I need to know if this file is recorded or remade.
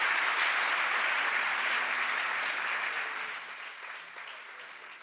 recorded